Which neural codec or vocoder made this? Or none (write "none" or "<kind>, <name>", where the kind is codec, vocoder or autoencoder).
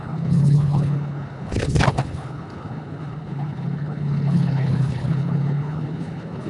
codec, HILCodec